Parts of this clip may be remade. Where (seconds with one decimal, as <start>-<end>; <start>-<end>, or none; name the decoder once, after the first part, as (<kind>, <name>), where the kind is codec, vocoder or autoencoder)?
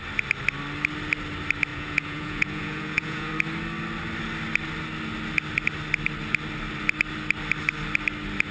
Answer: 1.7-3.3 (vocoder, Vocos)